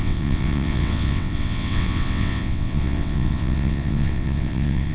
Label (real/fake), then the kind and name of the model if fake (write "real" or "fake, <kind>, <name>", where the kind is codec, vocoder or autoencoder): fake, vocoder, WaveNeXt